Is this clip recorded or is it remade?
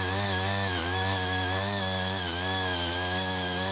remade